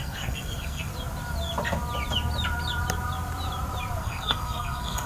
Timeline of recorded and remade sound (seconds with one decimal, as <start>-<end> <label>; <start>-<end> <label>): 0.0-0.9 remade; 0.9-4.0 recorded; 4.0-5.1 remade